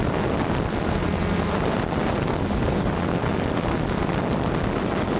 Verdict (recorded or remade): recorded